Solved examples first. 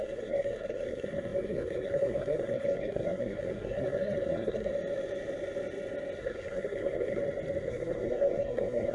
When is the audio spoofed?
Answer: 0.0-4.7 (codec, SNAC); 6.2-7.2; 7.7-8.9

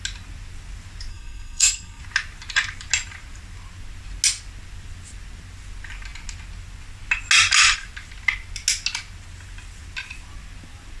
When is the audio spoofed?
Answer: 1.1-2.0 (codec, SNAC)

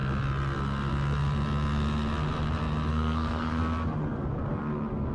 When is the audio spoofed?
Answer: 2.9-3.6 (codec, SNAC)

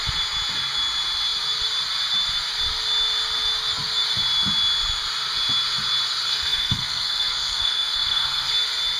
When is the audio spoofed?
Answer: 6.3-8.5 (codec, SNAC)

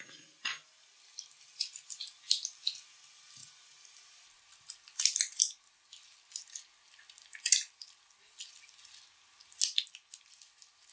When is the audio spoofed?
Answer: none